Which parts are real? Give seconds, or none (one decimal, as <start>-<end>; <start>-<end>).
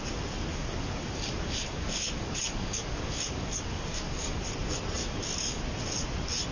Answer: 0.0-0.5; 4.4-5.0; 5.6-6.5